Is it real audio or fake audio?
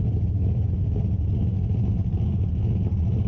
real